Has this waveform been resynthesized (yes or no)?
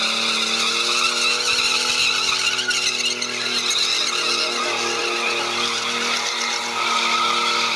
no